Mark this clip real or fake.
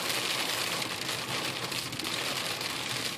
real